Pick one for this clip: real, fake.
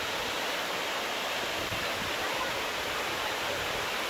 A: real